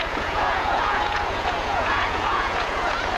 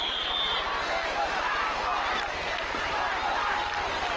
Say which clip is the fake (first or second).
first